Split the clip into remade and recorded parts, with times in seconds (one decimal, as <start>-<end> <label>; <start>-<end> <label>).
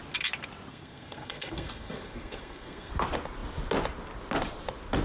0.0-0.7 recorded; 0.7-2.9 remade; 2.9-5.0 recorded